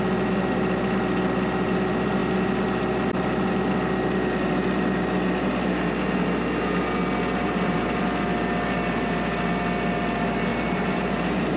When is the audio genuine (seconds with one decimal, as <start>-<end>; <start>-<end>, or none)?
0.0-7.4; 8.0-10.5